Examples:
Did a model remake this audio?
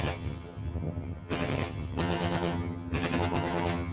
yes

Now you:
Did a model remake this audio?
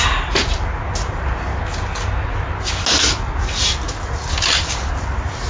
no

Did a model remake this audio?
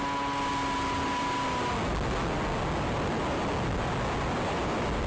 no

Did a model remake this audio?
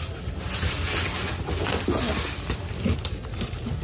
no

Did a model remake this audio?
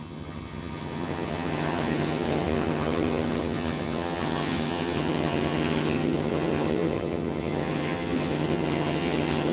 yes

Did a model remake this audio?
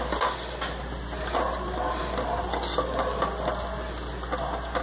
no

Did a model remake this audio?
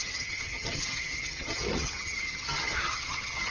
yes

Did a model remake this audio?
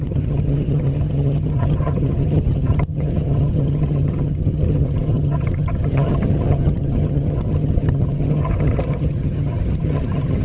yes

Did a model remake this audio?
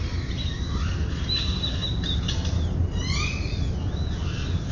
no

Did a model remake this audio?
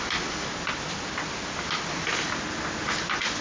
no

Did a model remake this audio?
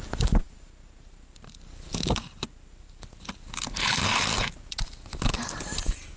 no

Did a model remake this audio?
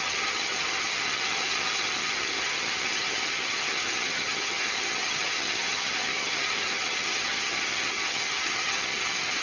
yes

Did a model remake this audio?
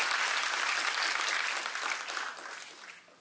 no